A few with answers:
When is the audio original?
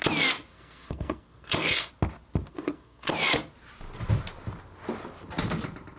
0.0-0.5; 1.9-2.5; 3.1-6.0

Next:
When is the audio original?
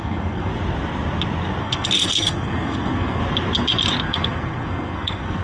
0.5-1.6; 3.2-4.0